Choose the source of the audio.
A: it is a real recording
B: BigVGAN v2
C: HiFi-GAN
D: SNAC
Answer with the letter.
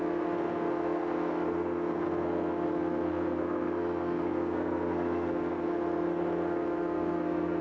D